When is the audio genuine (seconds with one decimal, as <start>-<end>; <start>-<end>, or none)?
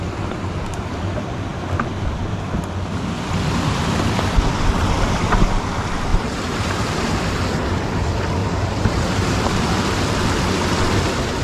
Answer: 0.0-6.1; 7.2-8.4; 9.7-11.4